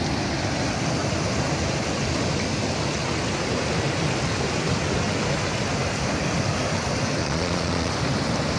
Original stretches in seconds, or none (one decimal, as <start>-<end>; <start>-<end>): 0.0-7.2; 7.9-8.6